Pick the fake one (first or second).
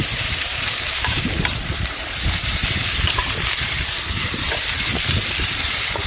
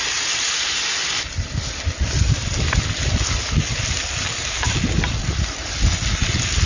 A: first